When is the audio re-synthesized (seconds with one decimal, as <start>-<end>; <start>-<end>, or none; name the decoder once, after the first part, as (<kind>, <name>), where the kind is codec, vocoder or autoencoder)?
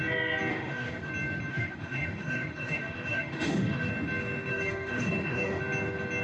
0.5-1.1 (autoencoder, DAC-VAE); 1.5-3.9; 4.5-5.6